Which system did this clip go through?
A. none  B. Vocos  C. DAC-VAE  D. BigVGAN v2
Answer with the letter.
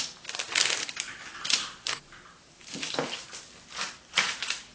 A